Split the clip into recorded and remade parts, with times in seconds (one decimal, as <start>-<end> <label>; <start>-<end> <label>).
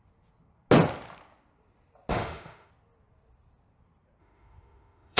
0.0-2.1 recorded; 2.1-2.7 remade; 2.7-4.2 recorded; 4.2-5.2 remade